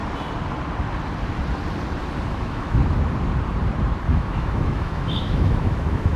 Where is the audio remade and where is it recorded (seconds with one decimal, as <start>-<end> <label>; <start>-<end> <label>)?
0.0-2.3 recorded; 2.3-2.8 remade; 2.8-4.1 recorded; 4.1-6.2 remade